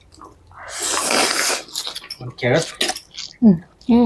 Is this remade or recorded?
recorded